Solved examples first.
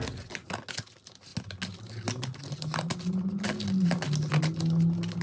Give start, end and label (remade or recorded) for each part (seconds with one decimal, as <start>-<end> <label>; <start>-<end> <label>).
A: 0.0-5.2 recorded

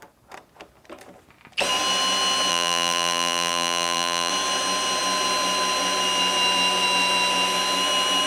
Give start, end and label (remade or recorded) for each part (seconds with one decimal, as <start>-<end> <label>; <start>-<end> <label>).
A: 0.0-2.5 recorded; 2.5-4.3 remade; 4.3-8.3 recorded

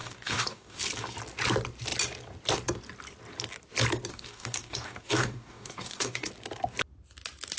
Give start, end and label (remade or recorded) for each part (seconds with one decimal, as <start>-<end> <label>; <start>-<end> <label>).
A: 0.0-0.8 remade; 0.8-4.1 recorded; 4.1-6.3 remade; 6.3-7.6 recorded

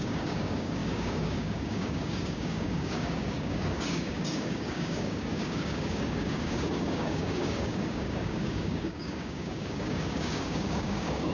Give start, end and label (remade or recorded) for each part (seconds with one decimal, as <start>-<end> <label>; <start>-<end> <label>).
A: 0.0-11.3 remade

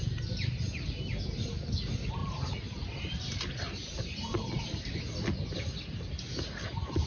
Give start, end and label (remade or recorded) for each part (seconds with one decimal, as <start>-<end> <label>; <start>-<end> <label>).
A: 0.0-2.2 recorded; 2.2-4.6 remade; 4.6-7.1 recorded